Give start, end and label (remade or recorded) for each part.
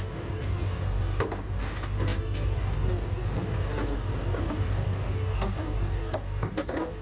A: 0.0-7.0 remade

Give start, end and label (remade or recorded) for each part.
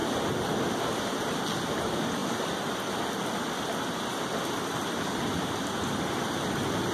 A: 0.0-6.9 recorded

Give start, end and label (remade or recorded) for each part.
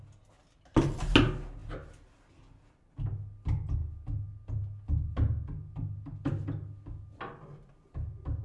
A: 0.0-8.4 recorded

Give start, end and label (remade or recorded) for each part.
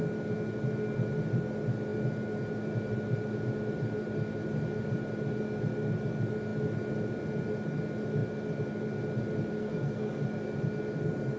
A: 0.0-9.6 recorded; 9.6-10.2 remade; 10.2-11.4 recorded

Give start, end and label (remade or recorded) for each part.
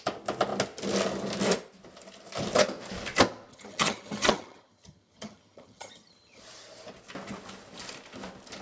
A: 0.0-3.5 recorded; 3.5-6.4 remade; 6.4-8.6 recorded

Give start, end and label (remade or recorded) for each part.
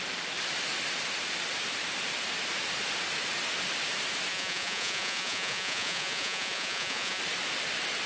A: 0.0-4.3 recorded; 4.3-7.2 remade; 7.2-8.1 recorded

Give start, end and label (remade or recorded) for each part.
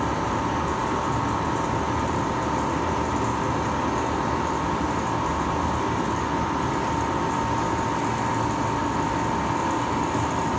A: 0.0-10.6 recorded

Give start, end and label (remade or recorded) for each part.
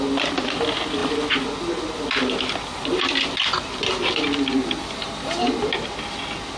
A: 0.0-6.6 recorded